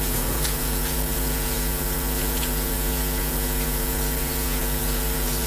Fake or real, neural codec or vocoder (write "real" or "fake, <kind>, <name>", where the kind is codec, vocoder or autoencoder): fake, vocoder, Vocos